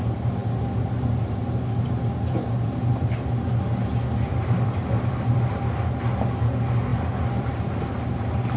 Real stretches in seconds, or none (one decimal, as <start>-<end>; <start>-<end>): 0.0-4.3; 5.5-6.9; 7.7-8.6